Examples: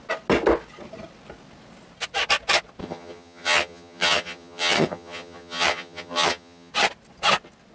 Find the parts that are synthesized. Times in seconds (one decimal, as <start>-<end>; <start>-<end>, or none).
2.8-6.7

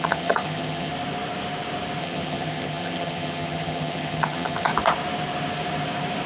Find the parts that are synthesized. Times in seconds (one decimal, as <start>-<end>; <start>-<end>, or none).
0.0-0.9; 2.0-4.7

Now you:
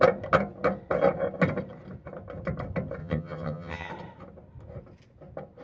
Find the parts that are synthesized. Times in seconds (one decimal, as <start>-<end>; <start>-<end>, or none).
3.0-3.9

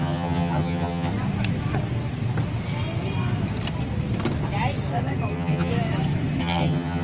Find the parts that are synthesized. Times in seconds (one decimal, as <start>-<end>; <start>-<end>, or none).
0.0-1.1; 5.3-5.7; 6.4-7.0

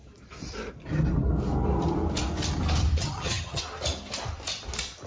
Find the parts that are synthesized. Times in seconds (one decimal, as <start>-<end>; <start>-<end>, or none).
3.0-3.6

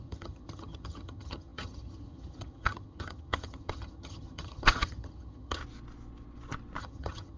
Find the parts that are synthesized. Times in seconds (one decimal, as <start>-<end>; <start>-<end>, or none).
0.0-5.6; 6.8-7.4

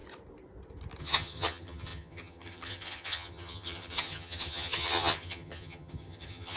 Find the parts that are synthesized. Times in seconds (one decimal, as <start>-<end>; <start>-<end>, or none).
1.0-6.6